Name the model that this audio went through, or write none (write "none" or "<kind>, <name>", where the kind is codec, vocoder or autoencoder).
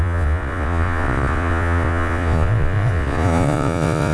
vocoder, Vocos